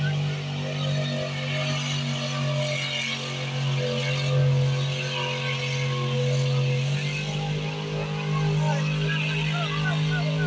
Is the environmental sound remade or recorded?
recorded